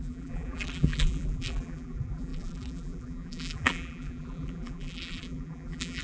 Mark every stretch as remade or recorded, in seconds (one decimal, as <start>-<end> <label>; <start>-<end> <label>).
0.0-6.0 remade